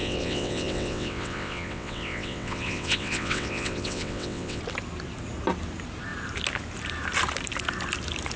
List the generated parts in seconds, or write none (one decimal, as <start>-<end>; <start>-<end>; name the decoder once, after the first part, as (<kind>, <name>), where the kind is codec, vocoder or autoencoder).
0.0-4.6 (vocoder, WaveNeXt)